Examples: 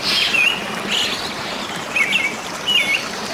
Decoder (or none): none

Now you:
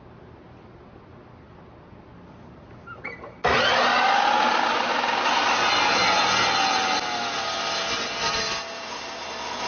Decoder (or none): none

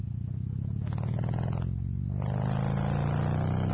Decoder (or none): none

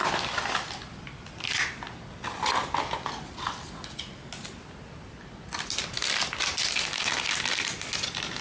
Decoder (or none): none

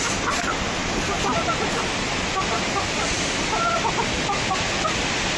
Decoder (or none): none